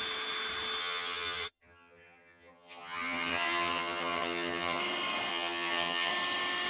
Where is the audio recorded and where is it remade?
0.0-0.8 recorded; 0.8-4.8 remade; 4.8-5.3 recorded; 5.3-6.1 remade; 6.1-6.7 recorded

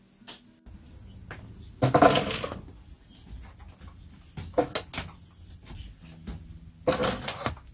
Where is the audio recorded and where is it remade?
0.0-7.7 recorded

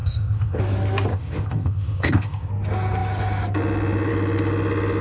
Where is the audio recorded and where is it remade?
0.0-0.6 remade; 0.6-1.1 recorded; 1.1-2.5 remade; 2.5-5.0 recorded

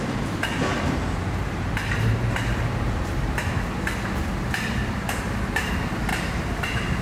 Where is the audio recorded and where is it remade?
0.0-0.7 recorded; 0.7-3.4 remade; 3.4-6.1 recorded; 6.1-7.0 remade

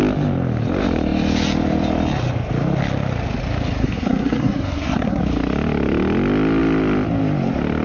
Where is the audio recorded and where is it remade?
0.0-3.8 recorded; 3.8-5.2 remade; 5.2-7.8 recorded